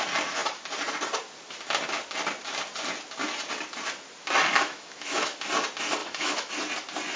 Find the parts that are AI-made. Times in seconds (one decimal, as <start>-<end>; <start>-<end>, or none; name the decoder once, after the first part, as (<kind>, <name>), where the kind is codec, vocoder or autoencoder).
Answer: 4.5-5.4 (autoencoder, DAC-VAE); 6.0-6.5